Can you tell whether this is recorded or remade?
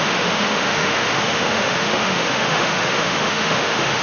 remade